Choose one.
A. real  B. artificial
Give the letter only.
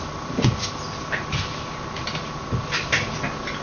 A